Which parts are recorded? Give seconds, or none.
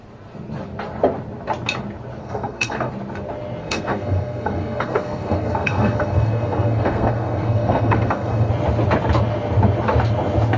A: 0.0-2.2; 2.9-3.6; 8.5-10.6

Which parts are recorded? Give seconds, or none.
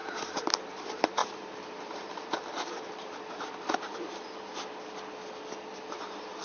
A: 0.0-0.7; 4.5-5.7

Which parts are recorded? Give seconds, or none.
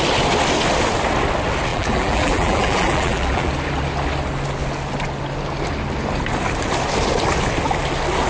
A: 0.0-1.7; 3.5-8.3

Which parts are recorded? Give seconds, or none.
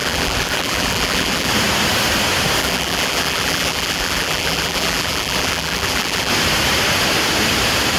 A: 1.5-2.6; 6.3-8.0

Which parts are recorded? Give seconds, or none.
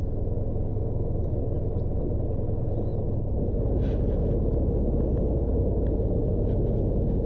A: 0.0-0.7; 1.3-7.3